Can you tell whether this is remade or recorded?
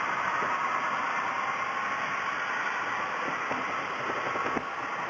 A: recorded